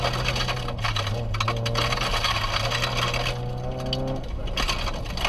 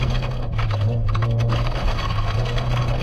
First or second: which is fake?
second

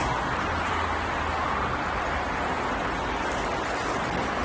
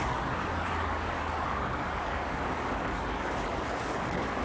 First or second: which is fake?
second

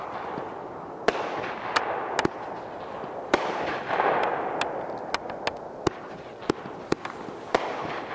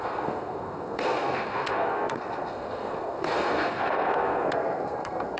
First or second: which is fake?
second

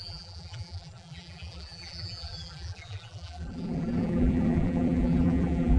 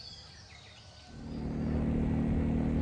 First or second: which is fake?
first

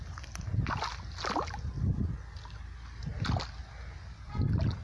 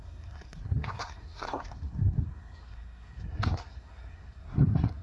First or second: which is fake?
second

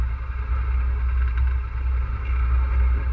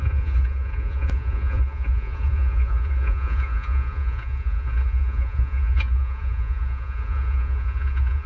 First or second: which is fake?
second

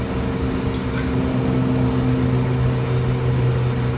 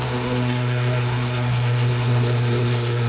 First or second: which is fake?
second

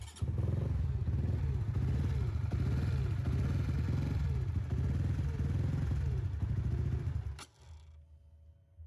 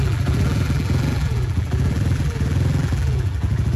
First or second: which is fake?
second